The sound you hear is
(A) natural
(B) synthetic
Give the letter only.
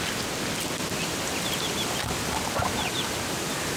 A